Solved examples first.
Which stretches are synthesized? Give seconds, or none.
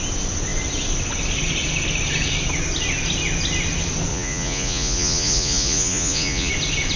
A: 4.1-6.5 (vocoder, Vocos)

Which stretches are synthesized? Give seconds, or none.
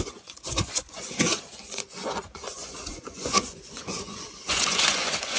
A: 0.0-5.4 (vocoder, Vocos)